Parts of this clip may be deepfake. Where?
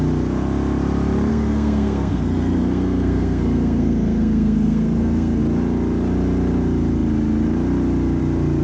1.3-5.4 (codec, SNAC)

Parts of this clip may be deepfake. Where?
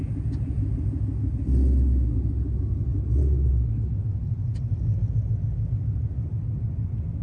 none